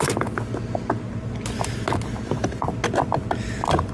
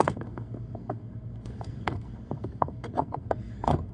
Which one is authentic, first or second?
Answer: first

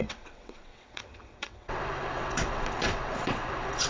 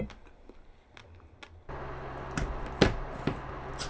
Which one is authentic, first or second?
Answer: second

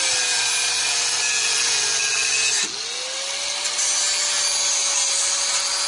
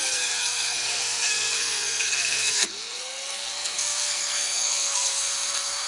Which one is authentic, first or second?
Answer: first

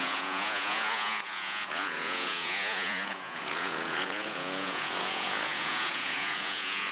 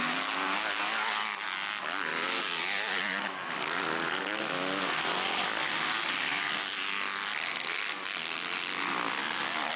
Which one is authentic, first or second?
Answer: second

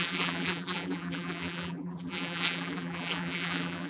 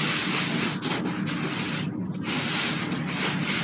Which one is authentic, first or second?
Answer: second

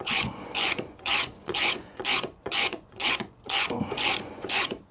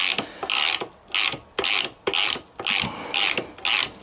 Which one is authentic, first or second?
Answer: second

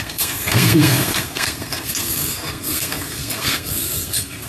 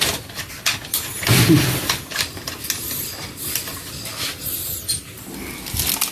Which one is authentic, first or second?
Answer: second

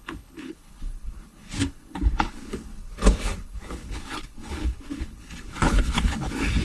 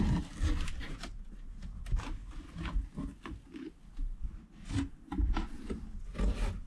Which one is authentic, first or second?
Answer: second